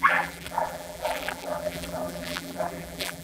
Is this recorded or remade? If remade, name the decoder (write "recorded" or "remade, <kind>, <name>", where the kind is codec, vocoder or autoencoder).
remade, vocoder, BigVGAN v2